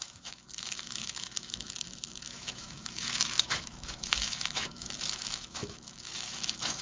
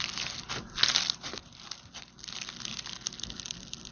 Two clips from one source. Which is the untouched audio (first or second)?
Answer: second